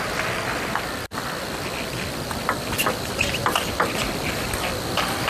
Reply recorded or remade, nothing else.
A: recorded